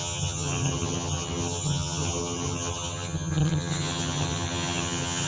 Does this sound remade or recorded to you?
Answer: remade